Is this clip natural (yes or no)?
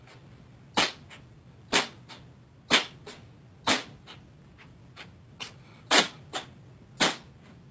yes